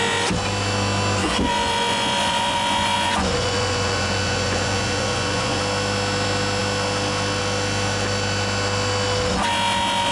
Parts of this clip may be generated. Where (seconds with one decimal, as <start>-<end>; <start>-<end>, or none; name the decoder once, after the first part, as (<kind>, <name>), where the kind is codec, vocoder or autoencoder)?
1.2-5.6 (vocoder, Vocos)